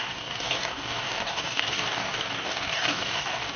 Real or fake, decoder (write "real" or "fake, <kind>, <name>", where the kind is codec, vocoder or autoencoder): fake, codec, DAC